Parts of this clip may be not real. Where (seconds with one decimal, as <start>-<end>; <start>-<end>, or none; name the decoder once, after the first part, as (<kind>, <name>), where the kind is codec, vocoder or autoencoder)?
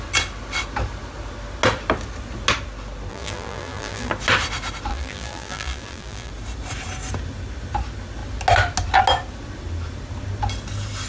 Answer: 3.1-4.1 (vocoder, BigVGAN v2); 4.9-6.3